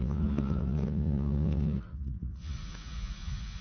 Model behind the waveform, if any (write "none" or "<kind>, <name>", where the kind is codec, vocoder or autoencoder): vocoder, Vocos